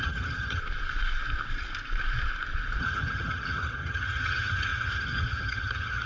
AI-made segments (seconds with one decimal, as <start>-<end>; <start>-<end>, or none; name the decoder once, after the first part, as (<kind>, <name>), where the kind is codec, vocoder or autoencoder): 0.0-0.6 (vocoder, HiFi-GAN); 2.8-6.1